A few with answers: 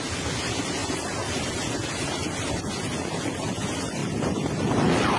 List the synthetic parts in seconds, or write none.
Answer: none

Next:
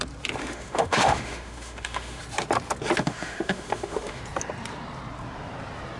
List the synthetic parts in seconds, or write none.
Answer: 0.4-2.2 (autoencoder, DAC-VAE); 3.0-4.2